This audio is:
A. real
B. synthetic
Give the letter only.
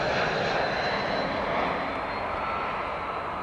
A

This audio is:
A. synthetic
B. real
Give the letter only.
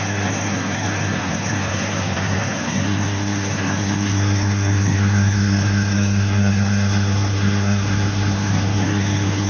A